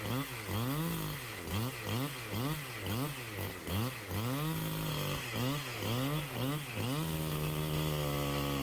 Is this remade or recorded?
recorded